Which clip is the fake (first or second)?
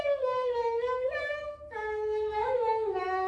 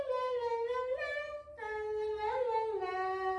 first